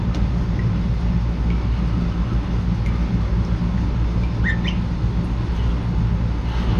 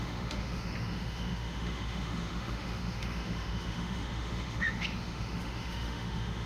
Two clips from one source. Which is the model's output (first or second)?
second